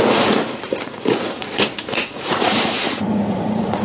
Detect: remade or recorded remade